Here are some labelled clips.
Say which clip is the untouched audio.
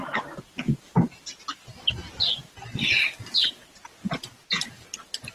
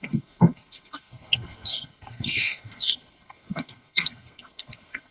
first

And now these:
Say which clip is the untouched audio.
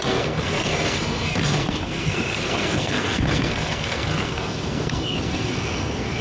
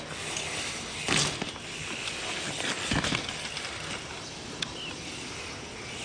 second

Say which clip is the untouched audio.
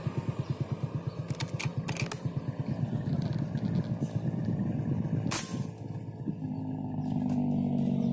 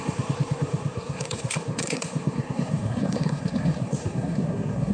first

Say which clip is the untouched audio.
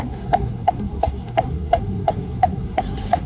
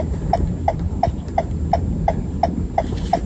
second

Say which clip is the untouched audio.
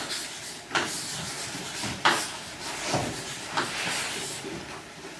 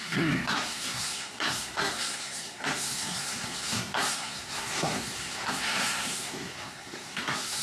first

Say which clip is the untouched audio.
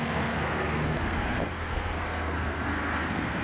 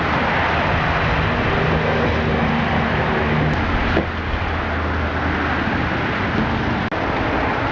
second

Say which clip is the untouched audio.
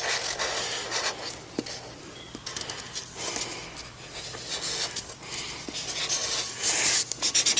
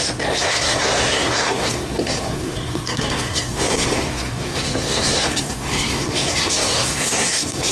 first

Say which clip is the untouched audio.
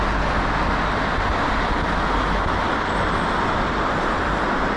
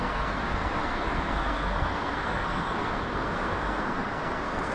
first